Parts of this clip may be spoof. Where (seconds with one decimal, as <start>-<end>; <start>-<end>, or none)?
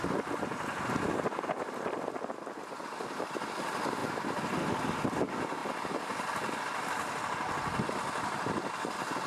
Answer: none